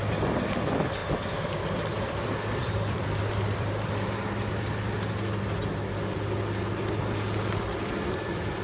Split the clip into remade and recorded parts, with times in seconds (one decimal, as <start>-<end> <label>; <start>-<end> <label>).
0.0-1.0 recorded; 1.0-3.9 remade; 3.9-8.6 recorded